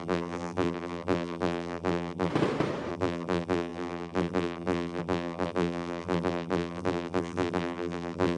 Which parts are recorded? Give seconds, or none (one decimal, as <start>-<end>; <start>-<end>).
2.3-2.9